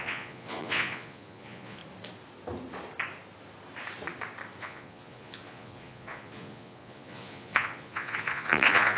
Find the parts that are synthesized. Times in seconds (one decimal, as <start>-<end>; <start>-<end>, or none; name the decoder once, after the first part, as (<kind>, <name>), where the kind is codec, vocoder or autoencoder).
0.0-1.8 (vocoder, Vocos); 4.6-9.0